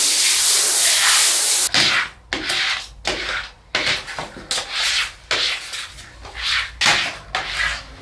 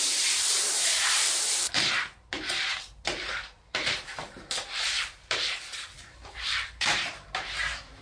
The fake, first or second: second